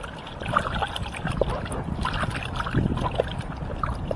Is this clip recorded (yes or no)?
yes